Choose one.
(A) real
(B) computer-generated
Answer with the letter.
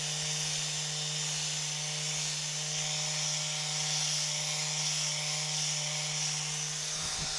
A